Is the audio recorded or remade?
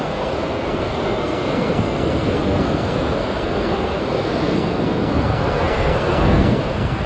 remade